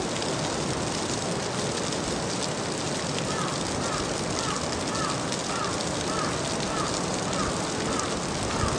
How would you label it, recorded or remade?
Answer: recorded